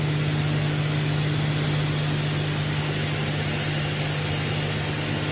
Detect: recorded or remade recorded